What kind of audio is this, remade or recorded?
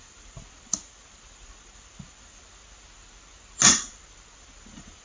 recorded